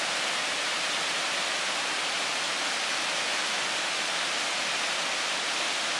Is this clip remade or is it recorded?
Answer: recorded